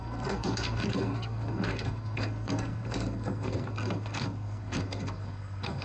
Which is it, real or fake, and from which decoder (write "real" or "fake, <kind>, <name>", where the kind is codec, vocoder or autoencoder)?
fake, codec, SNAC